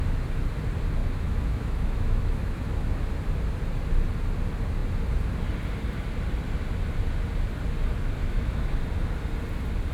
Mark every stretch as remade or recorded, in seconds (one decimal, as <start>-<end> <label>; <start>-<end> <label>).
0.0-1.0 recorded; 1.0-3.1 remade; 3.1-8.2 recorded; 8.2-8.8 remade; 8.8-9.9 recorded